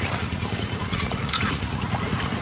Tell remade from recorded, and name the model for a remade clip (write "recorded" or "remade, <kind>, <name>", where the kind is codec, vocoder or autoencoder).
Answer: remade, vocoder, Vocos